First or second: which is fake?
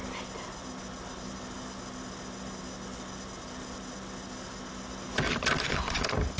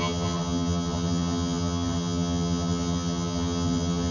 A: second